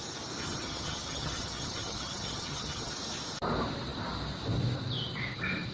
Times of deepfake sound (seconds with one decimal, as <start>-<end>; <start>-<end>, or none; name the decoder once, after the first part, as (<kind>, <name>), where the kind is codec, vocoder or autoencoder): 0.4-2.9 (vocoder, HiFi-GAN)